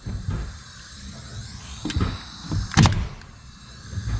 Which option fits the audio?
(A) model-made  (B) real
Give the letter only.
B